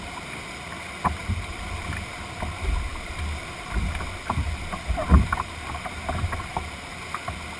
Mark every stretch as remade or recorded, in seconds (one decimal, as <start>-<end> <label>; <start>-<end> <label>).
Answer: 0.0-5.1 recorded; 5.1-6.3 remade; 6.3-7.6 recorded